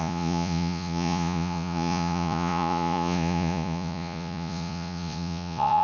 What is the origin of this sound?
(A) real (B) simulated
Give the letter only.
B